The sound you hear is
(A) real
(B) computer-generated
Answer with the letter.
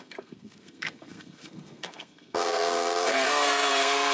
B